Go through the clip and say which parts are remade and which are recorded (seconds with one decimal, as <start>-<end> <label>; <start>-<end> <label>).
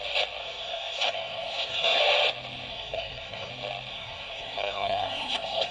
0.0-0.4 recorded; 0.4-2.0 remade; 2.0-2.7 recorded; 2.7-3.5 remade; 3.5-3.9 recorded; 3.9-5.7 remade